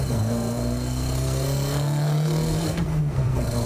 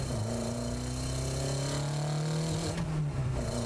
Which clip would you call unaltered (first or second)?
second